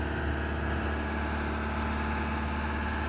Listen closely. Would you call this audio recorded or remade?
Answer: recorded